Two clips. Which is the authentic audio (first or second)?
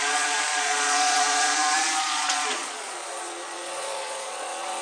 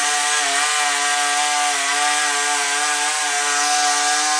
second